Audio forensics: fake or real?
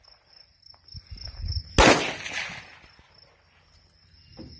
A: real